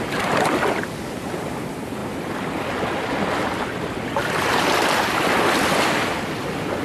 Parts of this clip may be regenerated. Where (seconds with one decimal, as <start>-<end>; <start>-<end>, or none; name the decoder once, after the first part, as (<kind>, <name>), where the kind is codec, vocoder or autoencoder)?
none